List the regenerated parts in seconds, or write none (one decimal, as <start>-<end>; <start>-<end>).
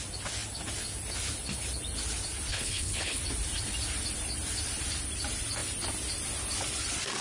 2.5-3.2